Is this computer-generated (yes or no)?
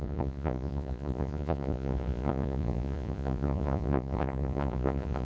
yes